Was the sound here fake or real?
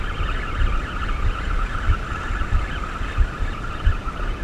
real